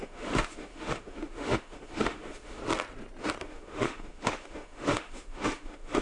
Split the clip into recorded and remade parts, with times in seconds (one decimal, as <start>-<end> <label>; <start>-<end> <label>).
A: 0.0-2.6 remade; 2.6-3.4 recorded; 3.4-6.0 remade